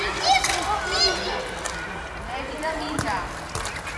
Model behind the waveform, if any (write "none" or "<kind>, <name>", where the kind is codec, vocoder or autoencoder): none